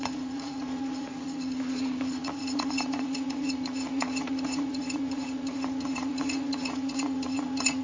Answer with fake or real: fake